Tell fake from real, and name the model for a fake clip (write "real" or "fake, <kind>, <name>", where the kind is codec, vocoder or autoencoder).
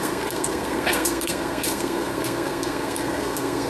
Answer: fake, codec, SNAC